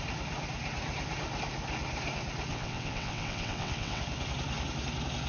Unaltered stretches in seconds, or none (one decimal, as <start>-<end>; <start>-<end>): 0.0-2.5; 4.0-5.3

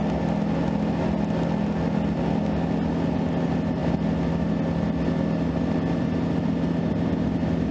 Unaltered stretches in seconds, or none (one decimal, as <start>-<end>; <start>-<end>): 0.0-7.7

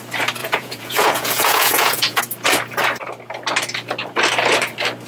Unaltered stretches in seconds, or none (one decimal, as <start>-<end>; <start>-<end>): 0.0-0.4; 2.2-5.1

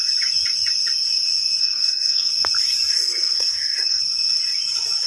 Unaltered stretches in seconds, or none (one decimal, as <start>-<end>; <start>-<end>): 0.0-1.6; 2.3-2.9; 4.0-5.1

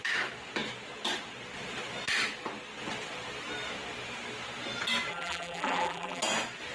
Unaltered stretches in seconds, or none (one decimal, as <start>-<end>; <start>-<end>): 0.0-5.1; 6.2-6.7

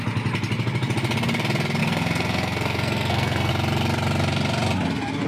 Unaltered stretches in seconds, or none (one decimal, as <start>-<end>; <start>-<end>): 0.0-1.8; 3.5-5.3

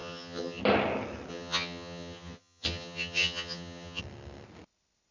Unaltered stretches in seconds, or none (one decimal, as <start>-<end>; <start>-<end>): 0.6-1.3; 4.0-5.1